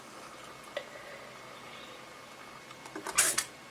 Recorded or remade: recorded